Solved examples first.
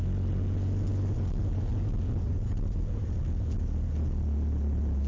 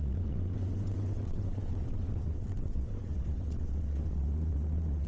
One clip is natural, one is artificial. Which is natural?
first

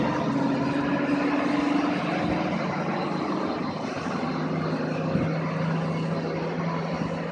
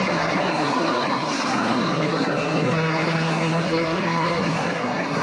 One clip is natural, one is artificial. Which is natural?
first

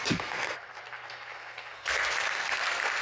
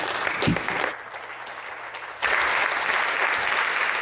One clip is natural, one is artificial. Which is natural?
second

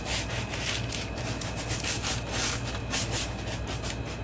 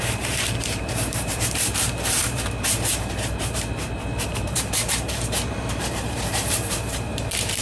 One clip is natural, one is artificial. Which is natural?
first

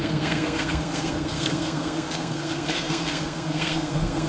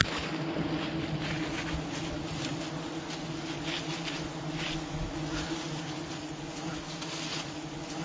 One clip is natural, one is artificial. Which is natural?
second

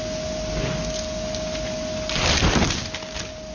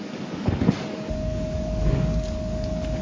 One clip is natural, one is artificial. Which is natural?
first